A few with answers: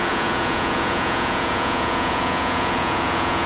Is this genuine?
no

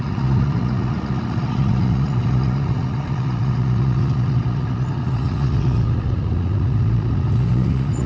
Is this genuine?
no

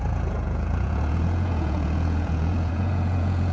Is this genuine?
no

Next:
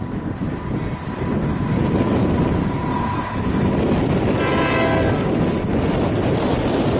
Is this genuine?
yes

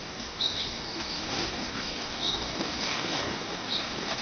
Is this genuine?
no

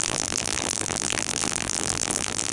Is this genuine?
no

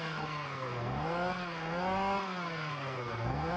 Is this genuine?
no